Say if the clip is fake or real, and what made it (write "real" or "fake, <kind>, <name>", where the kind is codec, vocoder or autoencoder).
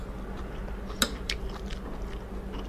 real